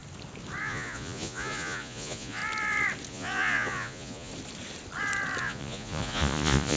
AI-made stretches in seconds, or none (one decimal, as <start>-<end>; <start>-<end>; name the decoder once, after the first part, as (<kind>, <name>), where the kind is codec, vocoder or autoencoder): 0.6-2.4 (vocoder, Vocos); 3.1-4.3; 5.4-6.8

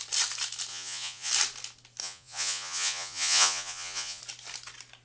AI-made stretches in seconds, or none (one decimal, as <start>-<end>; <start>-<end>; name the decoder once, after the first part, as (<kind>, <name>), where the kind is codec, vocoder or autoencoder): 0.7-1.3 (vocoder, Vocos); 2.0-4.2

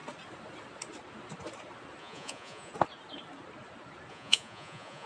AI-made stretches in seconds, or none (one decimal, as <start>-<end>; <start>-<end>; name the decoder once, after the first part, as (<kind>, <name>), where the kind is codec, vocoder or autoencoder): 2.0-2.7 (vocoder, Vocos); 4.1-5.1

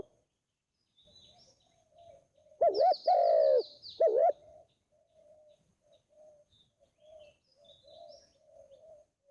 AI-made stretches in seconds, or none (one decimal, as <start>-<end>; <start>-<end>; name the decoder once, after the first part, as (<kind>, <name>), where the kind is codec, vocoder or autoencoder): none

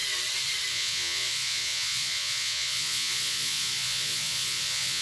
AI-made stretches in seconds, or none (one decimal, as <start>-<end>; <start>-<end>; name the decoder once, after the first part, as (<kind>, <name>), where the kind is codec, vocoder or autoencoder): 0.7-5.0 (vocoder, Vocos)